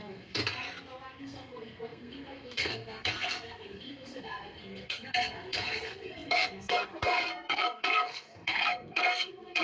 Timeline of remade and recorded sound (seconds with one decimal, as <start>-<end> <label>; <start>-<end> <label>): 0.0-0.4 remade; 0.4-1.2 recorded; 1.2-9.6 remade